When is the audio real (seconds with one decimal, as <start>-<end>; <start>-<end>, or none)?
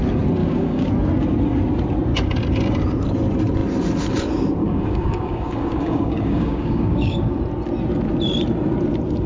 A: 0.0-0.4; 0.9-4.6; 7.4-9.3